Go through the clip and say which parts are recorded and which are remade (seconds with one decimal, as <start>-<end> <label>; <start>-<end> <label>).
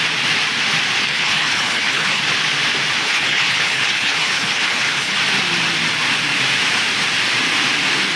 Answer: 0.0-1.0 recorded; 1.0-2.2 remade; 2.2-3.0 recorded; 3.0-5.2 remade; 5.2-8.2 recorded